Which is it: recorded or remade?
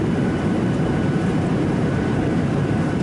remade